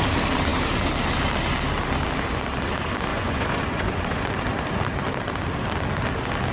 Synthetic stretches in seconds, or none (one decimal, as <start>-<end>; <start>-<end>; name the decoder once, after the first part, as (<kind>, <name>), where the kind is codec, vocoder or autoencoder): 3.1-4.3 (vocoder, Vocos)